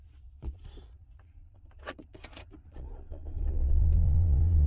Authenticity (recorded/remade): remade